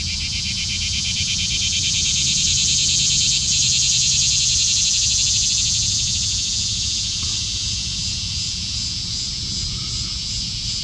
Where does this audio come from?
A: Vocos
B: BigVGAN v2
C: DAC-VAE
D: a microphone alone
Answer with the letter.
A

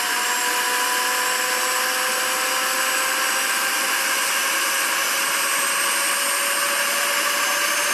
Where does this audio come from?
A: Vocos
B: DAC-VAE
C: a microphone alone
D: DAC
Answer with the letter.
C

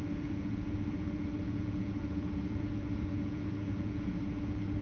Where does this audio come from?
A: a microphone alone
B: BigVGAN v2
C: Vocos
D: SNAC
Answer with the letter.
C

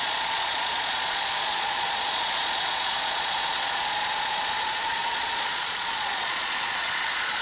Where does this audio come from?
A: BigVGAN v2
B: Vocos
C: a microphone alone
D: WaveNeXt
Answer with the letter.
B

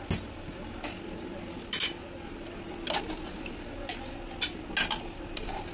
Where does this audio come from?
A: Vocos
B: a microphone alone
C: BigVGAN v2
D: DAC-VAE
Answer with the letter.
B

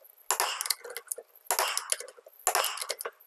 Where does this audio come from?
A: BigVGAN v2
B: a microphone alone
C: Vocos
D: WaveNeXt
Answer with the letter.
B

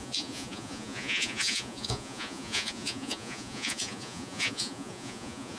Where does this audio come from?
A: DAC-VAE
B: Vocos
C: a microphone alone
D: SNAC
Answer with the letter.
B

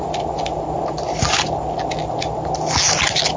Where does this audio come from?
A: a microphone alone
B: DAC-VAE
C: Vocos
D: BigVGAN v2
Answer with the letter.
A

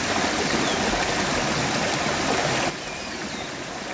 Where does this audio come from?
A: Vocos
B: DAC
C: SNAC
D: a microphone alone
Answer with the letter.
D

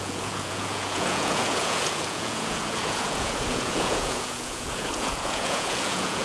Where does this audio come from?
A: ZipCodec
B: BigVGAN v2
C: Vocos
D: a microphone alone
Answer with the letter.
C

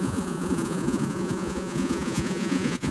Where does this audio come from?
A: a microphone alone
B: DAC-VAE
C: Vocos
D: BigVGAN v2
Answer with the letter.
C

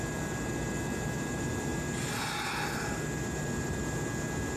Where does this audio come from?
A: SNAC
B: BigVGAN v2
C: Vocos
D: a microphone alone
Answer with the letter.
D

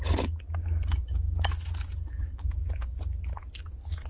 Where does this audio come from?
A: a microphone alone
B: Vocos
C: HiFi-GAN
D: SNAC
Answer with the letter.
A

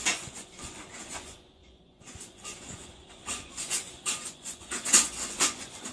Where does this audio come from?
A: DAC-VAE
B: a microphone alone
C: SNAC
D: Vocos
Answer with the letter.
D